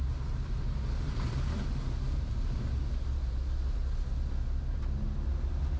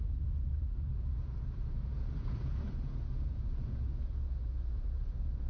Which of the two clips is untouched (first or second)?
first